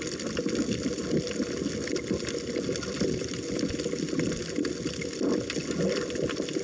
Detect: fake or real real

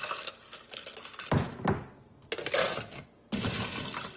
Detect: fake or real real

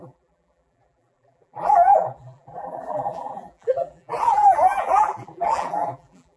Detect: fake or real fake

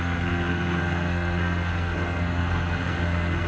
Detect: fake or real fake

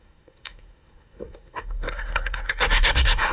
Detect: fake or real fake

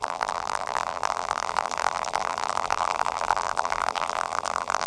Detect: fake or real fake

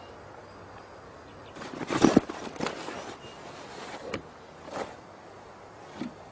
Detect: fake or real real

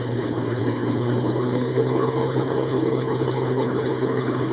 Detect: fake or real fake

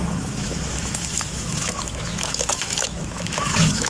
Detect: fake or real fake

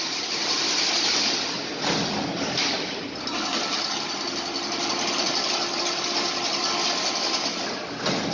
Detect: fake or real real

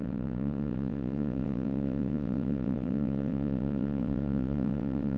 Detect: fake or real fake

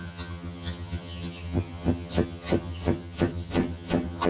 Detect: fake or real fake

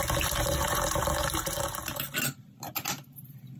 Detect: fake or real real